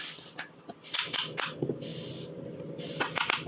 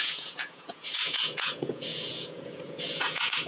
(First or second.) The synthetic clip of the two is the second